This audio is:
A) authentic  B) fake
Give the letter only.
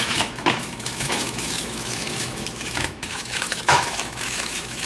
B